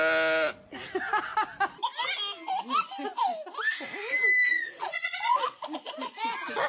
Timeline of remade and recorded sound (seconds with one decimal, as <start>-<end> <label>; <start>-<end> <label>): 0.0-4.5 recorded; 4.5-6.2 remade; 6.2-6.7 recorded